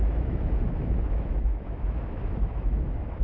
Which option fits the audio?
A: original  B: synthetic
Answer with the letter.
B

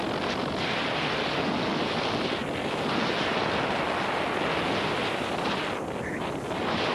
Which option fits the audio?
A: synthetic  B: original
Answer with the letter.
B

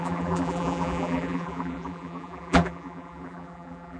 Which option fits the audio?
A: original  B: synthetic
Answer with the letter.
B